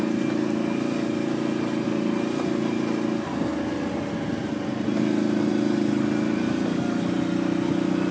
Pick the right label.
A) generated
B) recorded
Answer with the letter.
B